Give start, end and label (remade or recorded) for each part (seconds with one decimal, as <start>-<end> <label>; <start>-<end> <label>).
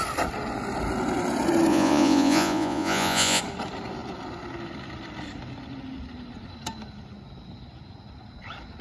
0.0-1.7 recorded; 1.7-3.4 remade; 3.4-8.8 recorded